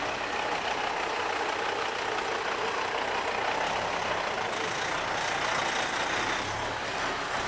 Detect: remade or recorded recorded